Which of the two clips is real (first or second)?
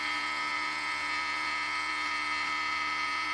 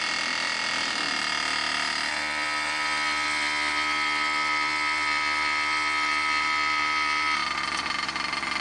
second